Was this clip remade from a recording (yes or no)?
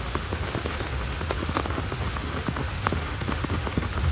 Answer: yes